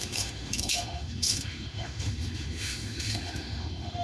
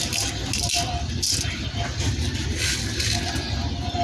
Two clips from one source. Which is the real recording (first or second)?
second